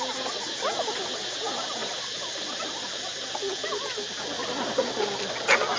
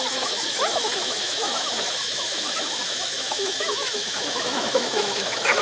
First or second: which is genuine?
first